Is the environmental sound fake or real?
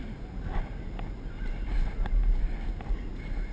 real